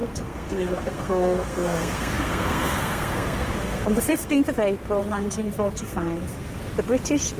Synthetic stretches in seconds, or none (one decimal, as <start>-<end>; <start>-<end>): 0.0-4.4; 5.0-6.7